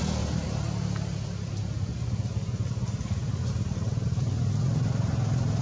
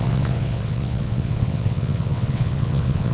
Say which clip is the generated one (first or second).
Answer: second